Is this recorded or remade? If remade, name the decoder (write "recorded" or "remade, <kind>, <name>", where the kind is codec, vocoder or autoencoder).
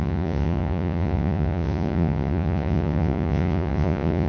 remade, vocoder, Vocos